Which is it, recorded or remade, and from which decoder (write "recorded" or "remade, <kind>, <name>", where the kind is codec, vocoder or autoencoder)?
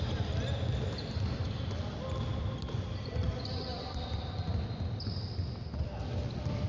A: recorded